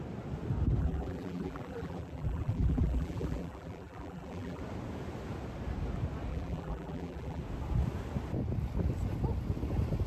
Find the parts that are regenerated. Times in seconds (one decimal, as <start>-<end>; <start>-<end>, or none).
0.8-4.6; 6.3-7.4

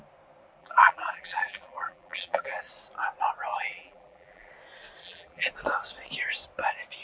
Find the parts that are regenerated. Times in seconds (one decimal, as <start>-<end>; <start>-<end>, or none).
0.6-2.7; 3.5-4.5; 5.0-5.5

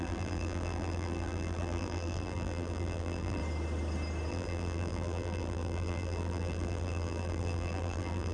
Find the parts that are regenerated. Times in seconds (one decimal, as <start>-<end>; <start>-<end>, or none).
0.0-3.4; 4.3-8.3